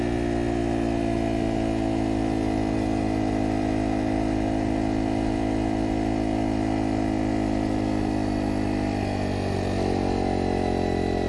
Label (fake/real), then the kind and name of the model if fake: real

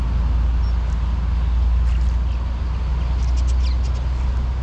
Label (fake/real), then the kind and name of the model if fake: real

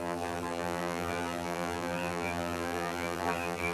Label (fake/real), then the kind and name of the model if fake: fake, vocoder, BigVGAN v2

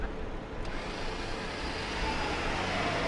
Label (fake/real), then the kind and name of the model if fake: real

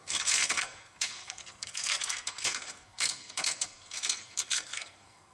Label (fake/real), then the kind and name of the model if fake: fake, codec, SNAC